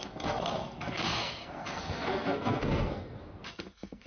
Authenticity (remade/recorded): remade